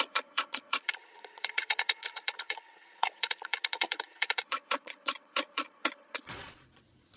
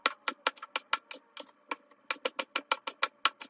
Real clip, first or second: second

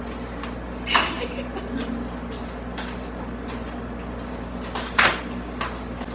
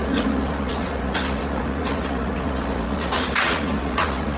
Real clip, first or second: first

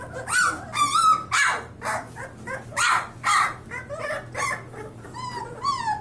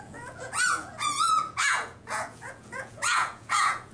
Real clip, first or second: first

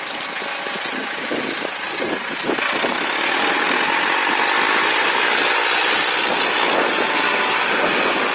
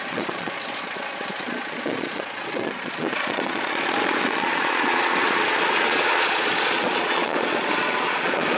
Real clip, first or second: first